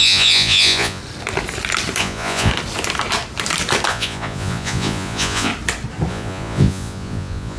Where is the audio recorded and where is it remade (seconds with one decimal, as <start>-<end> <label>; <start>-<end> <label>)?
0.0-1.0 remade; 1.0-2.0 recorded; 2.0-2.5 remade; 2.5-3.9 recorded; 3.9-5.5 remade; 5.5-6.1 recorded; 6.1-7.6 remade